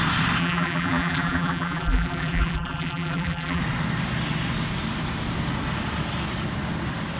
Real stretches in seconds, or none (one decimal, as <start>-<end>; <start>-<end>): 0.0-0.4; 3.6-7.2